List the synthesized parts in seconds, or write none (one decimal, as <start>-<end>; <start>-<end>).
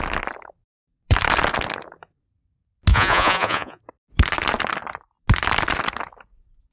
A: 2.9-3.8